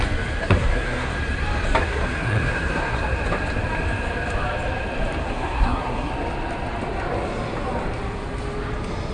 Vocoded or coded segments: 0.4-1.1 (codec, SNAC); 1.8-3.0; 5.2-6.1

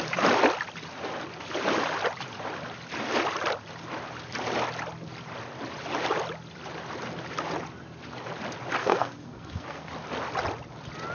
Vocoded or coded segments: 8.8-9.9 (codec, SNAC)

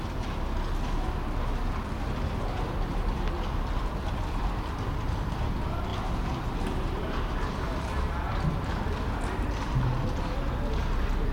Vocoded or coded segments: none

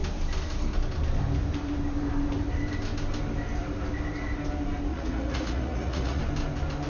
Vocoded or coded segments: 4.9-6.2 (vocoder, Vocos)

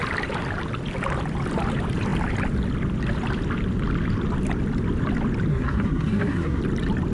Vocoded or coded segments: 5.5-6.6 (codec, SNAC)

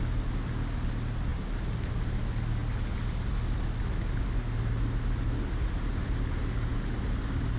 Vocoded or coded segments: none

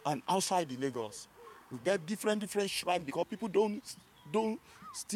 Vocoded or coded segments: 0.0-3.1 (codec, SNAC)